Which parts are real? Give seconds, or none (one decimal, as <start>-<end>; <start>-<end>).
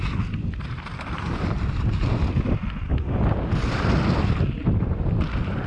0.0-5.7